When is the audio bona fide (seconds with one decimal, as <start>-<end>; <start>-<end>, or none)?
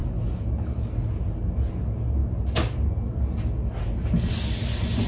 0.0-5.1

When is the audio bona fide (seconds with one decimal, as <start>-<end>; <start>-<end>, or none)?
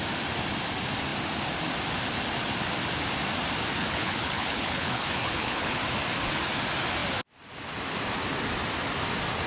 0.0-3.8; 5.8-9.5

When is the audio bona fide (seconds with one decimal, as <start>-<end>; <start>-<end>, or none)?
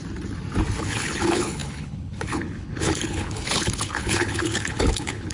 0.0-0.8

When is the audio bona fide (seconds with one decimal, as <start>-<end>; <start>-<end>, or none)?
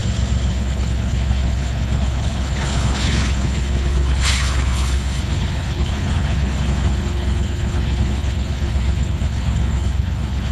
0.0-0.5